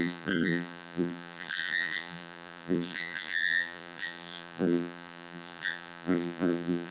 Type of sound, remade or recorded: remade